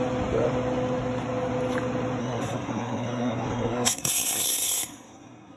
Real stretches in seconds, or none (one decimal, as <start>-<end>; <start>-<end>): 0.0-2.2